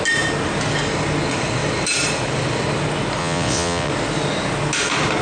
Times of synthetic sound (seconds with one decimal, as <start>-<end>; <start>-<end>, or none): 3.2-3.9